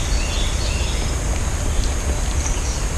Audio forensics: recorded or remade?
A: recorded